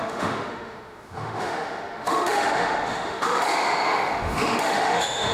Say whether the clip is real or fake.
fake